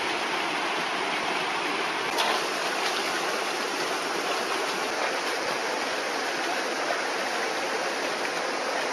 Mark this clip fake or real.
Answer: real